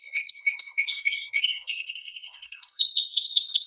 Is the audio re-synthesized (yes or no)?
yes